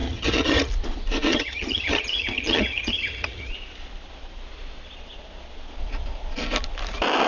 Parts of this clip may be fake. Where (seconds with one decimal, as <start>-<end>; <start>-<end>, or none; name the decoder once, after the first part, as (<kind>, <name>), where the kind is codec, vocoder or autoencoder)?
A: 0.0-0.7 (vocoder, HiFi-GAN); 1.3-3.5